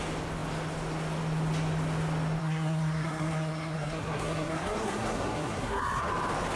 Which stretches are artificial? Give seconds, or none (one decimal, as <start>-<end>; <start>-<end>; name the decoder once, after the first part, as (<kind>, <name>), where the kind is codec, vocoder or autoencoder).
2.4-6.1 (codec, SNAC)